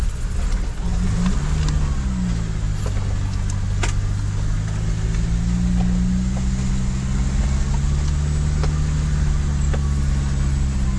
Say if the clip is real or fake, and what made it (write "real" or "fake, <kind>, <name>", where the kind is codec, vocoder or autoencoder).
real